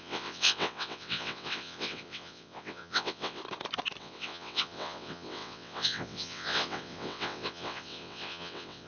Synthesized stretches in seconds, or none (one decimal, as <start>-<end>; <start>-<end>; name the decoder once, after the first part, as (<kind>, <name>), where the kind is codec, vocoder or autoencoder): 0.0-3.4 (vocoder, WaveNeXt); 4.0-8.9